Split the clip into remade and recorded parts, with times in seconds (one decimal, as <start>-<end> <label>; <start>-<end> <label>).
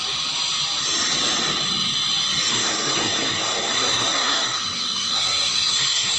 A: 0.0-2.5 recorded; 2.5-6.2 remade